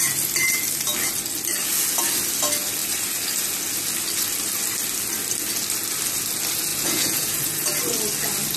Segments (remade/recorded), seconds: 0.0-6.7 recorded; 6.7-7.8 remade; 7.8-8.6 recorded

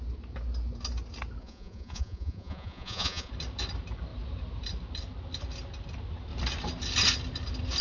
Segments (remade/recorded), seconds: 0.0-1.4 recorded; 1.4-3.3 remade; 3.3-7.8 recorded

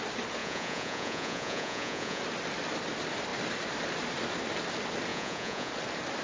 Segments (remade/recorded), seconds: 0.0-0.4 recorded; 0.4-2.2 remade; 2.2-5.1 recorded; 5.1-5.7 remade; 5.7-6.2 recorded

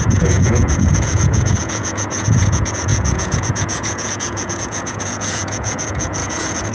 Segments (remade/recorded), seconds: 0.0-6.7 remade

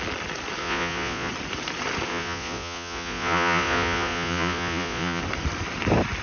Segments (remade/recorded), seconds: 0.0-0.6 recorded; 0.6-1.3 remade; 1.3-2.1 recorded; 2.1-5.2 remade; 5.2-6.2 recorded

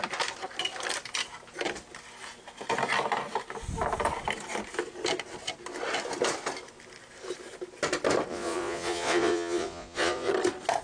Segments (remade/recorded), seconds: 0.0-8.3 recorded; 8.3-10.3 remade; 10.3-10.8 recorded

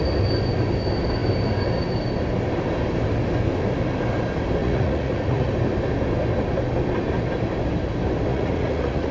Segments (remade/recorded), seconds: 0.0-4.6 recorded; 4.6-5.5 remade; 5.5-8.3 recorded; 8.3-9.1 remade